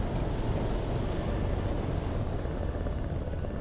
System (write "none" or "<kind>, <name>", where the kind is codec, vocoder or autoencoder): none